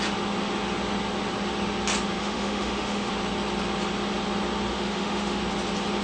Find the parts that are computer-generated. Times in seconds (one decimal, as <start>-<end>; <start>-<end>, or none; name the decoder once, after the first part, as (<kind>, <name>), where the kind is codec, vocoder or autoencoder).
2.2-3.1 (autoencoder, DAC-VAE); 4.7-5.4